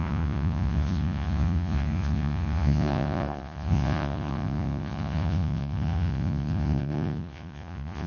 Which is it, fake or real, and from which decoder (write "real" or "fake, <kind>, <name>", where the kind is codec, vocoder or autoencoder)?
fake, vocoder, Vocos